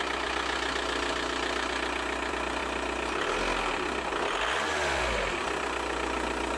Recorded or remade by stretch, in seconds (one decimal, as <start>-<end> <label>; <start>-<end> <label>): 0.0-6.6 recorded